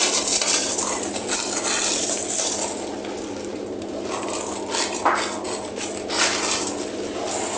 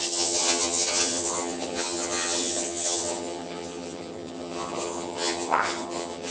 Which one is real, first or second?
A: first